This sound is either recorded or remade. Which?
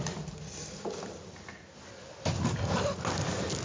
recorded